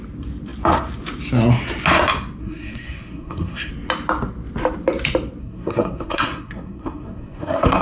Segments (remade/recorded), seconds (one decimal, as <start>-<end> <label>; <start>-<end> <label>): 0.0-2.4 recorded; 2.4-3.7 remade; 3.7-5.4 recorded; 5.4-7.8 remade